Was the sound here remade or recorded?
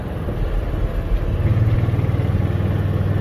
recorded